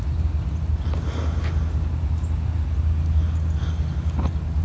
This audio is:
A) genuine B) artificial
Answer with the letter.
A